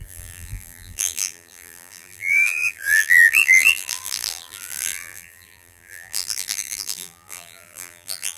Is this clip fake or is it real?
fake